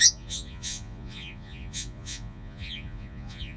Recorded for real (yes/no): no